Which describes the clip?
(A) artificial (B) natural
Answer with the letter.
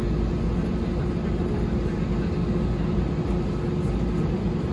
B